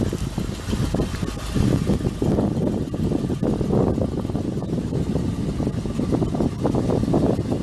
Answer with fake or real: real